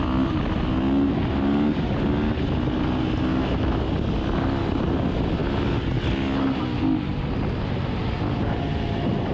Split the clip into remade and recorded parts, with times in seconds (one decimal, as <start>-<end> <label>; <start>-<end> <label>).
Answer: 0.0-3.3 recorded; 3.3-3.8 remade; 3.8-9.3 recorded